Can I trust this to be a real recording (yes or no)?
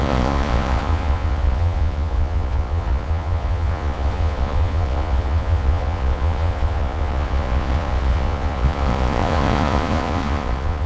no